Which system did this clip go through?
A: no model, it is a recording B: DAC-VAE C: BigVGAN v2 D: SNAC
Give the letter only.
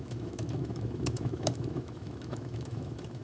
B